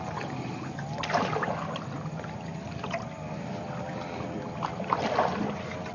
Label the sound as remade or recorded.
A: recorded